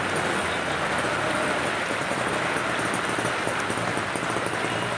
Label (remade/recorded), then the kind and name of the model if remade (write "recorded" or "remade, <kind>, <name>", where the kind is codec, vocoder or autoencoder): recorded